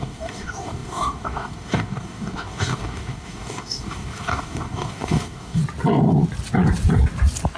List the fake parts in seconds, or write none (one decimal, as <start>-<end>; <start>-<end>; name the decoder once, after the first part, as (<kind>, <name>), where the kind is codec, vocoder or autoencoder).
0.0-5.6 (codec, DAC)